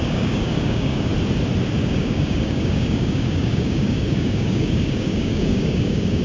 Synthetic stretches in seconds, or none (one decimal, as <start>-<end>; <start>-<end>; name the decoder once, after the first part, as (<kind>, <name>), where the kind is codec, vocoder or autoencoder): 0.0-1.1 (codec, DAC); 1.8-6.2